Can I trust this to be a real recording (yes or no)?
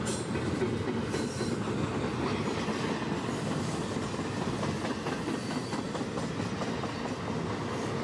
yes